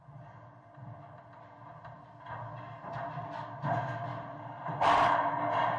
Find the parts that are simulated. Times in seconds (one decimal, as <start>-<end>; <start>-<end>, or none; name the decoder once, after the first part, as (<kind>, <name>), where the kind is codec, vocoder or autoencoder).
none